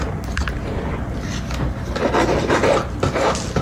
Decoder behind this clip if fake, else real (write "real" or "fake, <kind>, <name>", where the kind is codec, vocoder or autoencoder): real